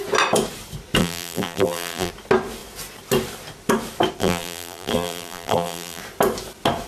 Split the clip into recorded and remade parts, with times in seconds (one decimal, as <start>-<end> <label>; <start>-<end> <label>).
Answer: 0.0-1.0 recorded; 1.0-2.1 remade; 2.1-4.2 recorded; 4.2-6.0 remade; 6.0-6.9 recorded